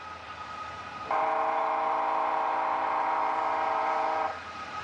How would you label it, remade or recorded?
remade